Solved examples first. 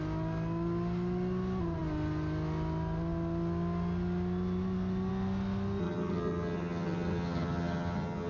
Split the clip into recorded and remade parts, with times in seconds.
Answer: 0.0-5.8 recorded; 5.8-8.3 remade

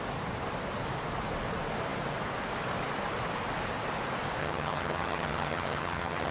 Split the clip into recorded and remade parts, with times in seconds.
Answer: 0.0-4.4 recorded; 4.4-6.3 remade

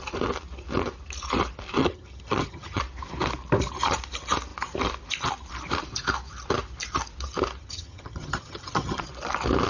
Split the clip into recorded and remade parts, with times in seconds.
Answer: 0.0-1.8 recorded; 1.8-2.8 remade; 2.8-7.6 recorded; 7.6-9.0 remade; 9.0-9.7 recorded

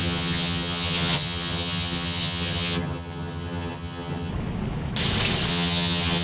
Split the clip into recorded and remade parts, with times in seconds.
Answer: 0.0-4.3 remade; 4.3-5.5 recorded; 5.5-6.2 remade

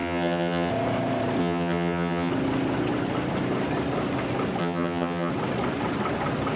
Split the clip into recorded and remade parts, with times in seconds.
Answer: 0.0-0.7 remade; 0.7-1.4 recorded; 1.4-2.3 remade; 2.3-4.6 recorded; 4.6-5.3 remade; 5.3-6.6 recorded

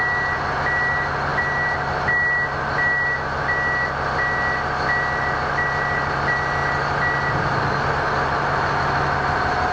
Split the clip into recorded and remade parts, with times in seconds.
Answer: 0.0-9.7 recorded